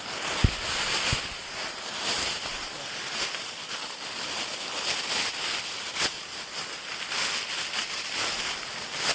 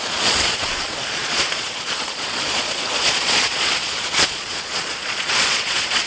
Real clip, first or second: first